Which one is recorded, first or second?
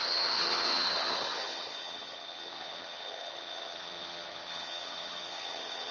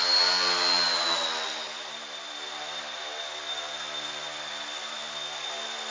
second